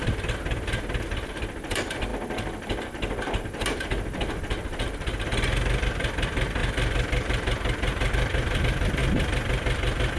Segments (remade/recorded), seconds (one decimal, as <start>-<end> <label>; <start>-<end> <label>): 0.0-10.2 recorded